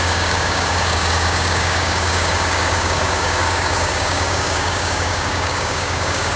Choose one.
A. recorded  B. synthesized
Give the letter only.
B